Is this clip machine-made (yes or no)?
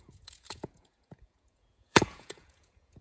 yes